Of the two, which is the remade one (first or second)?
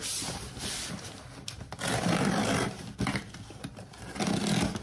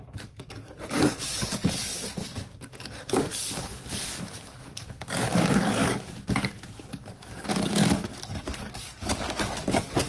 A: second